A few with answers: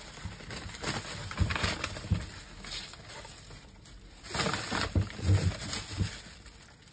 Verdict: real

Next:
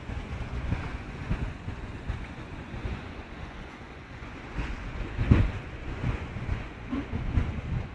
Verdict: fake